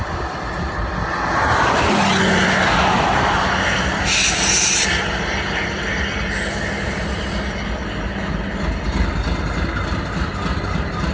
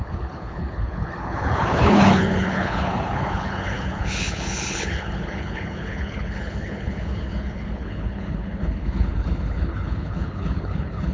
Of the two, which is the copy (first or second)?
second